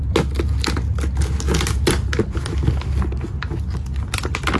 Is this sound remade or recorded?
recorded